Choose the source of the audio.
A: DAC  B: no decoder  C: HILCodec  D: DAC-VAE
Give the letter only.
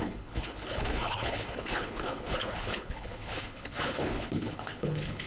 C